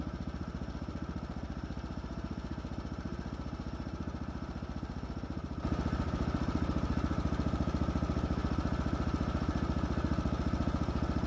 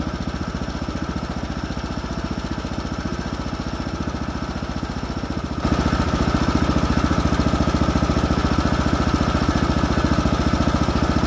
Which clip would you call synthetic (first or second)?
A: first